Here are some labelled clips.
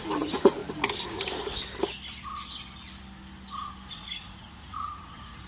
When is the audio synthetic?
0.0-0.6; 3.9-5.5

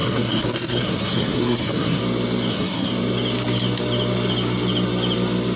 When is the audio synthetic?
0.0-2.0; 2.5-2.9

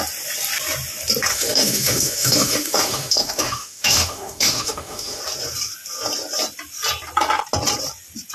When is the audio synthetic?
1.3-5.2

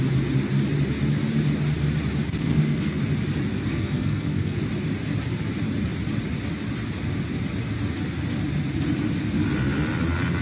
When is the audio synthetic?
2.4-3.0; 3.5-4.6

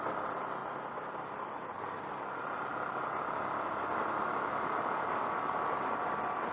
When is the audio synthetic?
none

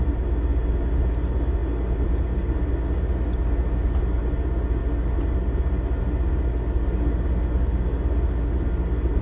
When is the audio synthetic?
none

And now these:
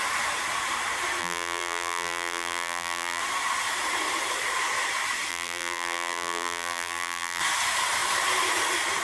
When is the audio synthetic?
1.2-3.2; 5.3-7.4

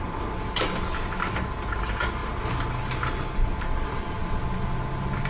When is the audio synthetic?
none